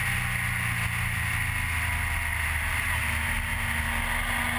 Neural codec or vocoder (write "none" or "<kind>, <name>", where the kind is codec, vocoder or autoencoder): none